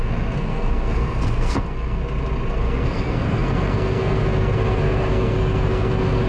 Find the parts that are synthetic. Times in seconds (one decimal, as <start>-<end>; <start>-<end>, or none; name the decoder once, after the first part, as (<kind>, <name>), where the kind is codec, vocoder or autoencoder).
0.0-2.0 (codec, SNAC); 2.5-6.3